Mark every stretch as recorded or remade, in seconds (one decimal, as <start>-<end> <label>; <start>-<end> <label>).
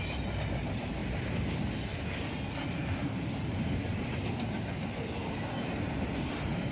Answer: 0.0-3.0 recorded; 3.0-4.2 remade; 4.2-6.7 recorded